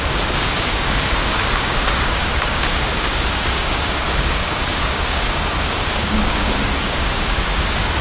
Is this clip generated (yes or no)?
yes